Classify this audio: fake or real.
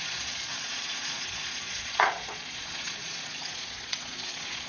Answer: fake